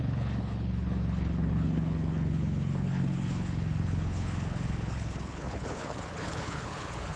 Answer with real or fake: fake